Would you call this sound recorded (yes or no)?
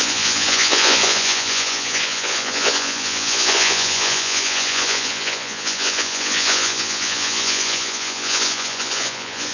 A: no